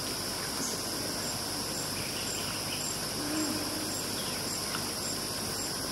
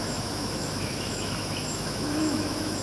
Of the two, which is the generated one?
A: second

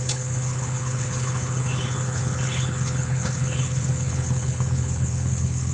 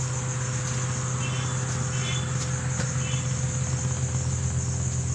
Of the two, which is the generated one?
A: first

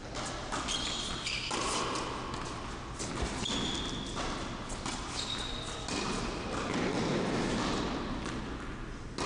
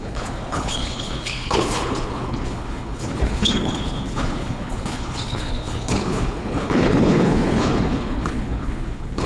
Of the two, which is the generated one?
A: second